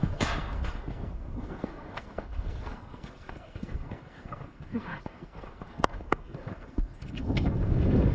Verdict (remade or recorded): remade